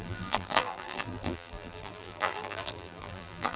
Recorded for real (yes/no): no